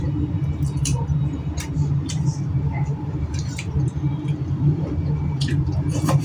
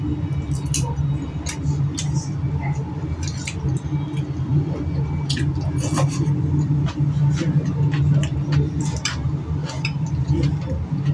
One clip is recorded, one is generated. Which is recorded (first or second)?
second